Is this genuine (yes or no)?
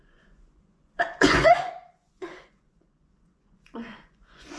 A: no